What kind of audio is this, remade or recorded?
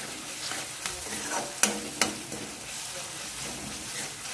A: recorded